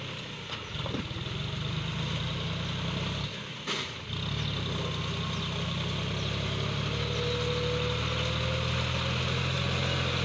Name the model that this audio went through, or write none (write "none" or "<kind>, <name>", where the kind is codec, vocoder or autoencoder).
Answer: none